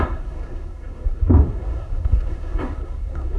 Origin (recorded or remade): remade